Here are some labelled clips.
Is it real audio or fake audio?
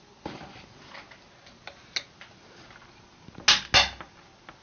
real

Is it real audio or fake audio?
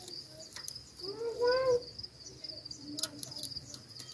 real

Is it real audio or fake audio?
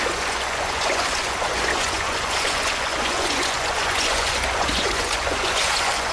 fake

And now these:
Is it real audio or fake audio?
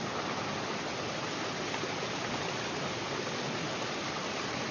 real